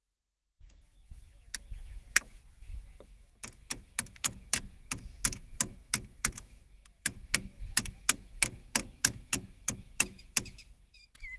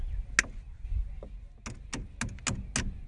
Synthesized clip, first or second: first